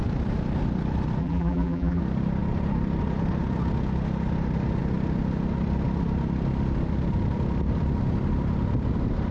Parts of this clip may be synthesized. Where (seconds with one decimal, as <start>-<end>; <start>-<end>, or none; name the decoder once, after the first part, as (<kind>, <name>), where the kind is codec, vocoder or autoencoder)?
1.2-2.0 (vocoder, BigVGAN v2)